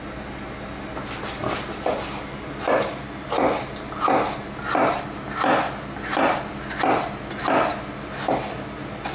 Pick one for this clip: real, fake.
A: real